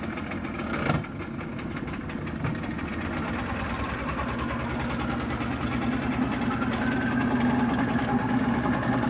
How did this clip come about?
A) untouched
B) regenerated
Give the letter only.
A